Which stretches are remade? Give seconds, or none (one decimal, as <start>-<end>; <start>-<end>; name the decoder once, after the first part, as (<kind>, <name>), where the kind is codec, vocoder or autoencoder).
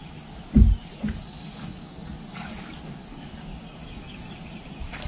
1.2-2.5 (codec, DAC); 3.0-4.6